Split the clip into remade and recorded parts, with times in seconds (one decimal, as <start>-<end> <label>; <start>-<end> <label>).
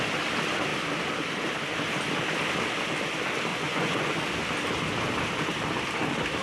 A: 0.0-3.5 recorded; 3.5-4.2 remade; 4.2-6.4 recorded